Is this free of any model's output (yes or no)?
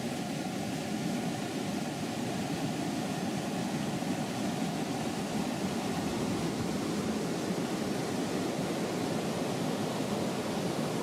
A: yes